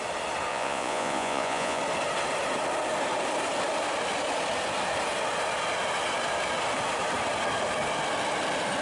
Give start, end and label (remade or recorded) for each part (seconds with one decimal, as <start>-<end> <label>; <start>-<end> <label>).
0.0-0.5 recorded; 0.5-1.8 remade; 1.8-8.8 recorded